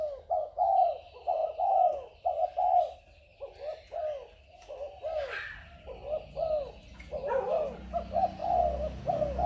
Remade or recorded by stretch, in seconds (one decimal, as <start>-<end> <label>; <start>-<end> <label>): 0.0-9.5 recorded